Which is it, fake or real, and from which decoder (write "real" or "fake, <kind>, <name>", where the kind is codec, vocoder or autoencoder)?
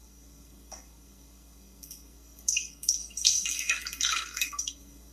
fake, codec, SNAC